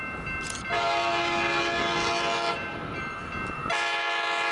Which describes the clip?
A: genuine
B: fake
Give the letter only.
A